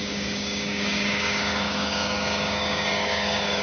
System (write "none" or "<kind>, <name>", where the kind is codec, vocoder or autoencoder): codec, DAC